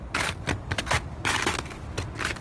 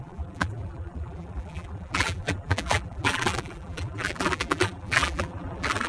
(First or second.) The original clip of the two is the first